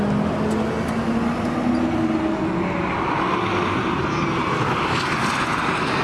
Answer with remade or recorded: recorded